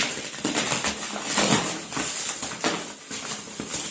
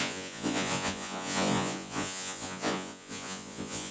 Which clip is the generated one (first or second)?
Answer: second